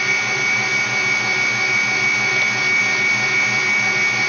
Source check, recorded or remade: recorded